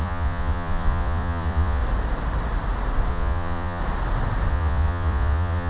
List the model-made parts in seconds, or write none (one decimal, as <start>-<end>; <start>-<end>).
0.0-1.8; 3.1-3.8; 4.5-5.7